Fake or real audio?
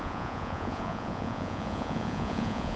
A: fake